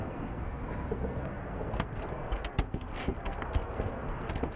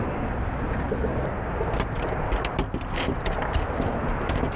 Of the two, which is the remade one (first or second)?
first